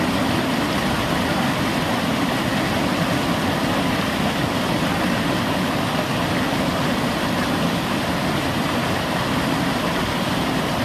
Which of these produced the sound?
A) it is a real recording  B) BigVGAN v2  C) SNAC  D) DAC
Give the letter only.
A